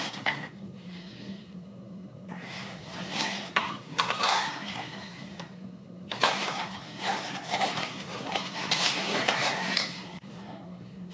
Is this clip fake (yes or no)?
yes